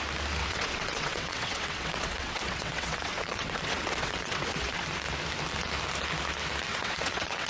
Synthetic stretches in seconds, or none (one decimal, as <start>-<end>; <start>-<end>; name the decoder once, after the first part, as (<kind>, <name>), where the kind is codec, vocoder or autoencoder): 0.4-4.8 (vocoder, WaveNeXt); 6.7-7.5